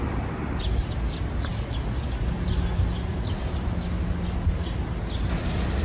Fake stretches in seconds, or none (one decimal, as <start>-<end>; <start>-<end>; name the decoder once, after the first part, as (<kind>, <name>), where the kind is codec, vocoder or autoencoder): none